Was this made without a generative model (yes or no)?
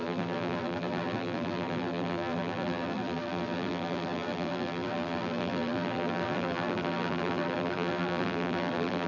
no